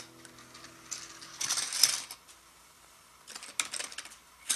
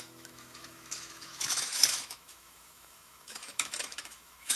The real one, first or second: first